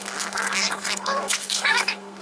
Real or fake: fake